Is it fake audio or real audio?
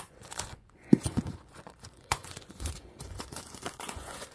fake